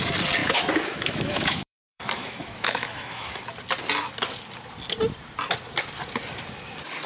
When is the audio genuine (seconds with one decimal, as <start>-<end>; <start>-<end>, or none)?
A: 0.0-0.4; 3.4-7.1